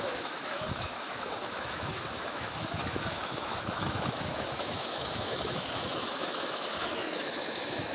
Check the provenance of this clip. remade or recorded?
remade